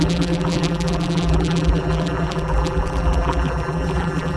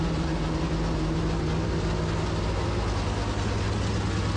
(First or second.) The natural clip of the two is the second